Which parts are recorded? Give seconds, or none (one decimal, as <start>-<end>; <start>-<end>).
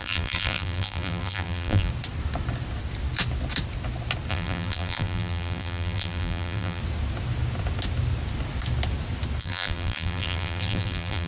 1.9-4.3; 6.8-9.4